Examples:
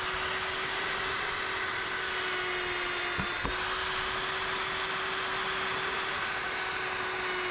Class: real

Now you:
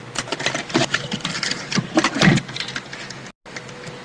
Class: real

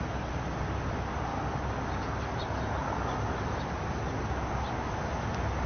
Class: real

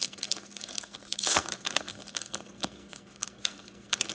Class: fake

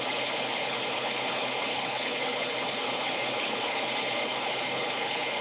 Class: fake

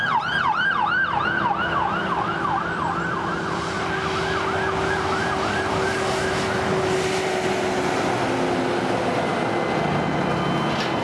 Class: real